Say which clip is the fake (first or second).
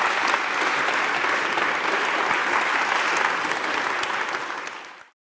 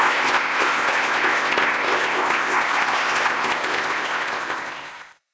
second